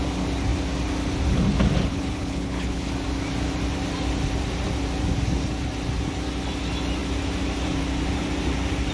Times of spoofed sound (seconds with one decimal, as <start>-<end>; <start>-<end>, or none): 1.9-2.9